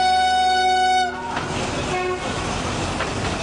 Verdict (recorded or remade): recorded